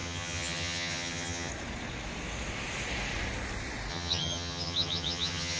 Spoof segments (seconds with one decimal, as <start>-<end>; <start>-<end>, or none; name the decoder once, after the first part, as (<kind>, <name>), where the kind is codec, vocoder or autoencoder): 0.0-1.5 (vocoder, HiFi-GAN); 3.9-5.6